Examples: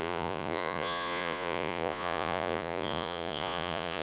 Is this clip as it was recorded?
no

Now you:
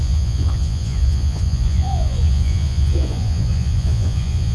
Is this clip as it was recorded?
no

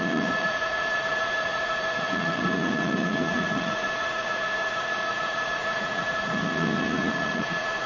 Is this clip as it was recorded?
no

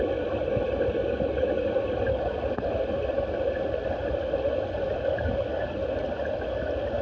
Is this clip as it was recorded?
yes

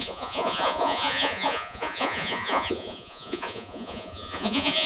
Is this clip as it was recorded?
no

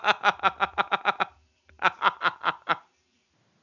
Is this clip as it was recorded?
yes